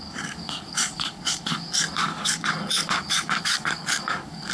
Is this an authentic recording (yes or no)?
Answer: no